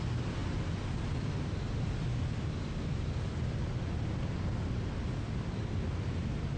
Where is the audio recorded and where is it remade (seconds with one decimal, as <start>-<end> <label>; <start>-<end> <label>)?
0.0-6.6 recorded